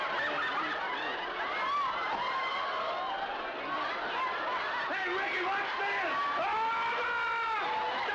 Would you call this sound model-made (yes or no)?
no